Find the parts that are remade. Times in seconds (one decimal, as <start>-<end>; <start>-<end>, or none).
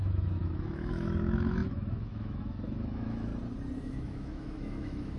0.0-3.3; 3.8-5.2